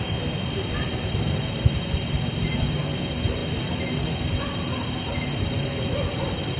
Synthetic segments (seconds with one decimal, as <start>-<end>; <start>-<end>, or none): none